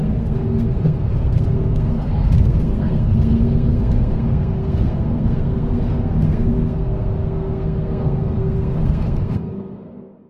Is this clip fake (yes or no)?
yes